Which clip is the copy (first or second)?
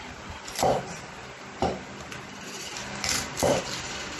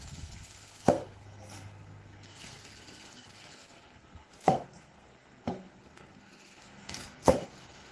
second